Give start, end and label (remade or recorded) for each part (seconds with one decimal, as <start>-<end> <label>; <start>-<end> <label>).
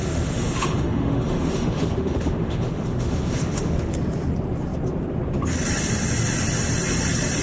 0.0-3.9 remade; 3.9-7.4 recorded